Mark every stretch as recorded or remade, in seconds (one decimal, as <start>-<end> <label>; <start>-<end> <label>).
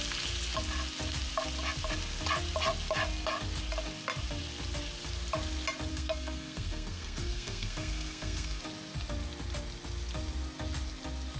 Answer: 0.0-5.9 recorded; 5.9-8.6 remade; 8.6-11.4 recorded